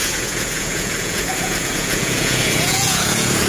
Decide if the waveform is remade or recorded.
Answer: remade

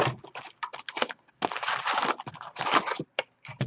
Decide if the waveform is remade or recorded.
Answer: recorded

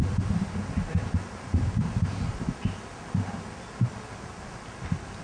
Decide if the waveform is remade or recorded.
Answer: recorded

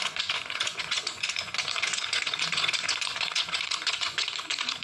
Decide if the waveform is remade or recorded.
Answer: remade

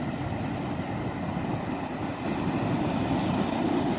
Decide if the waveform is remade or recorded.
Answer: recorded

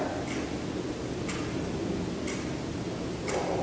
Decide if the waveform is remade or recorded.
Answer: recorded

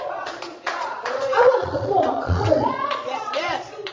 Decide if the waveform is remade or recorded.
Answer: remade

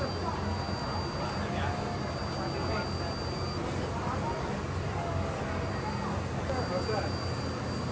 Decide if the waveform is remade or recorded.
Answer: recorded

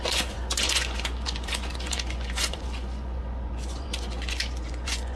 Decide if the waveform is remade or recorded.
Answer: remade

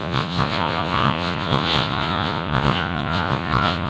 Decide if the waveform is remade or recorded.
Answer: remade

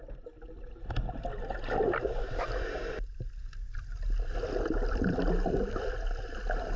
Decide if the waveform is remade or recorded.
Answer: recorded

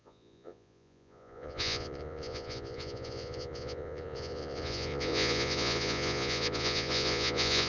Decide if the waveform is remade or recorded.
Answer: remade